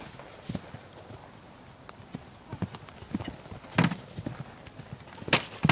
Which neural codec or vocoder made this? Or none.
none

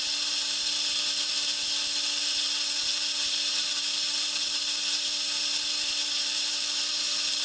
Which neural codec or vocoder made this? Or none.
vocoder, BigVGAN v2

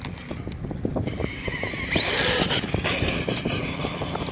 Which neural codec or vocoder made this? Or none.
none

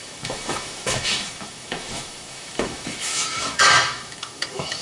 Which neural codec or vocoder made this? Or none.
autoencoder, DAC-VAE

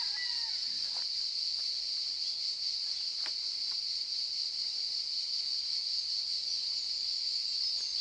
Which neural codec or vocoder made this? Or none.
none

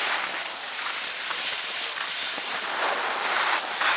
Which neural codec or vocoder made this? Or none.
none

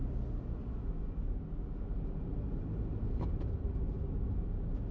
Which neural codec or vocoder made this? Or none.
none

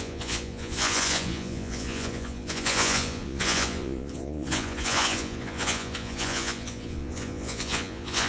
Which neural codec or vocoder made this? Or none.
vocoder, Vocos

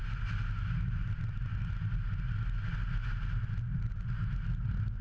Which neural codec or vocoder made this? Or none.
none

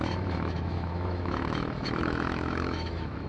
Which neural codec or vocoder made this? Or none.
autoencoder, DAC-VAE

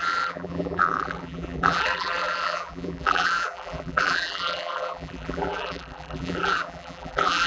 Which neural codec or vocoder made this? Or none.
vocoder, BigVGAN v2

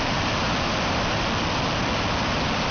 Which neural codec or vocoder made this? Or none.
none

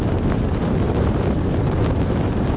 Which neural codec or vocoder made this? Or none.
none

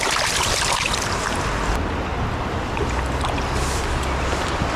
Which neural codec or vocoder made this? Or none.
none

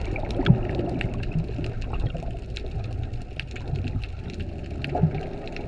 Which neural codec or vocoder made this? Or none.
none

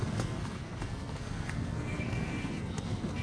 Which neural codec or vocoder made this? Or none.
codec, SNAC